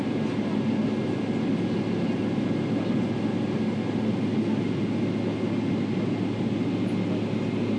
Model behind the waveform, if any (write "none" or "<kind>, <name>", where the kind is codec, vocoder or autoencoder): none